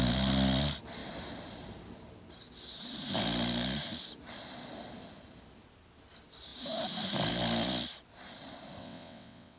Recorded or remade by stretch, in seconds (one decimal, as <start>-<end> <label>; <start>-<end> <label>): 0.0-8.8 recorded; 8.8-9.6 remade